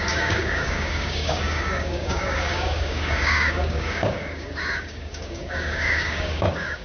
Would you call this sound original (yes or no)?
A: no